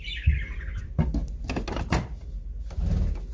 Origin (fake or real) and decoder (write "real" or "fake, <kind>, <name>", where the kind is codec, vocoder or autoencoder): real